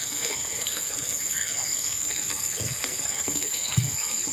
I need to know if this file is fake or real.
fake